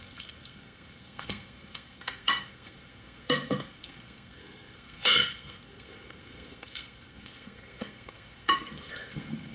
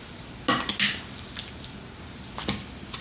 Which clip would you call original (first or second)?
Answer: second